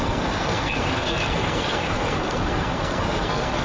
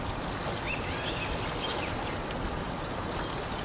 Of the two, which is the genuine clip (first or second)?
second